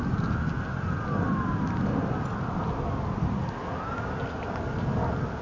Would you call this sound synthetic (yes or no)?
no